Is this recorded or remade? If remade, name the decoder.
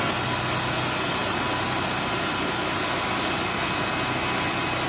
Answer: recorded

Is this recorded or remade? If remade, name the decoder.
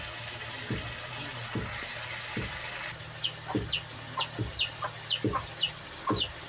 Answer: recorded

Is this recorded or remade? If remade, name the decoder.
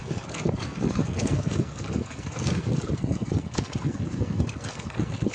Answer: remade, codec, SNAC